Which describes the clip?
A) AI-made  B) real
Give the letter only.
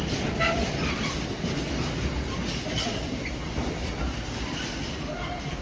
A